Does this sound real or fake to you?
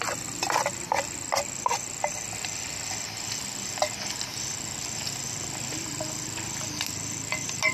real